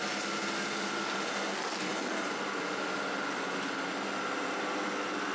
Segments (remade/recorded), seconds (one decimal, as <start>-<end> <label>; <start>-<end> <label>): 0.0-5.3 recorded